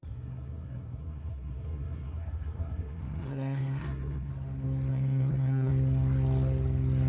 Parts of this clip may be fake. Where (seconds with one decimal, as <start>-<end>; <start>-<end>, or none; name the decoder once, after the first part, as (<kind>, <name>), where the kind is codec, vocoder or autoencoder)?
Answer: 0.0-4.3 (codec, SNAC); 4.9-5.7

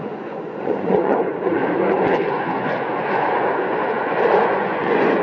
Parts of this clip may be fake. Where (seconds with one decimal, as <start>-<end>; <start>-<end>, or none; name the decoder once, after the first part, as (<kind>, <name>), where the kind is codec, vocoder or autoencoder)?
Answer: 0.0-1.6 (vocoder, Vocos); 2.3-5.2

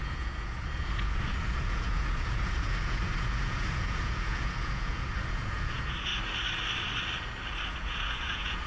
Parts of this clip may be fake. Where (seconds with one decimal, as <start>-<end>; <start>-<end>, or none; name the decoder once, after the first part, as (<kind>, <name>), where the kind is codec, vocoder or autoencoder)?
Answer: 0.0-6.1 (vocoder, Vocos); 7.7-8.7

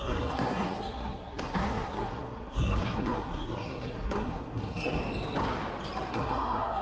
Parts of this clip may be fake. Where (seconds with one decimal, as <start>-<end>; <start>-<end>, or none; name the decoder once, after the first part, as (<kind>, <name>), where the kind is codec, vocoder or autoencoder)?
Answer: 0.0-5.0 (codec, SNAC); 6.1-6.8

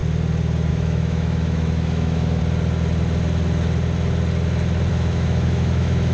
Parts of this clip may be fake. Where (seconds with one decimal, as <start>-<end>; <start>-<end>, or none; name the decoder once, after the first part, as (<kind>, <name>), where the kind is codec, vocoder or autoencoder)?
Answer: 0.7-2.4 (autoencoder, DAC-VAE); 4.9-6.1

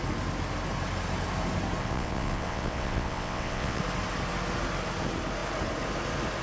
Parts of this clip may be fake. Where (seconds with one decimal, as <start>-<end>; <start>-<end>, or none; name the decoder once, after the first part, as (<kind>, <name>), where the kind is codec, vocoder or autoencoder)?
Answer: 1.8-3.8 (vocoder, WaveNeXt)

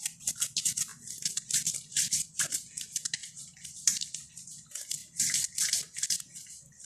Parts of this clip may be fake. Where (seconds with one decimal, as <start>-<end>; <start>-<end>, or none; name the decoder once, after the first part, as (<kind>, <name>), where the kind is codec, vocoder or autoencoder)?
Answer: 0.9-1.5 (vocoder, BigVGAN v2); 3.2-4.3